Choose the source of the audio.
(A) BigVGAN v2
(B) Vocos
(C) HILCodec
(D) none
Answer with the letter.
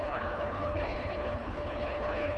C